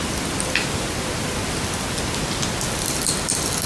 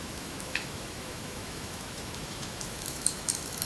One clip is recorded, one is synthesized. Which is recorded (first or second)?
first